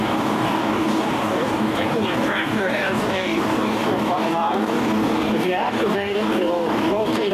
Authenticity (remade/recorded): remade